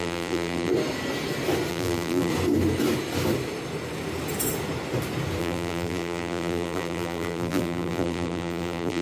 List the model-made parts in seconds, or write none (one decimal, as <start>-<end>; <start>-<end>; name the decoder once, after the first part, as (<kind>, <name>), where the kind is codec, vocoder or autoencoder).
0.0-0.7 (vocoder, BigVGAN v2); 1.7-2.3; 5.4-9.0